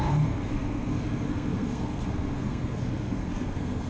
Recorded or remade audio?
remade